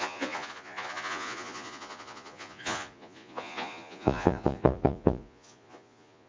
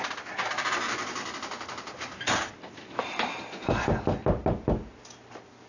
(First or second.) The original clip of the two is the second